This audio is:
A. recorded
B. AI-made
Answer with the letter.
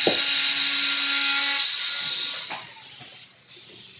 A